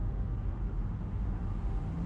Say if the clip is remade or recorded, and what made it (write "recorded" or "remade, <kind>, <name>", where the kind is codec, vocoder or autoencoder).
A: remade, autoencoder, DAC-VAE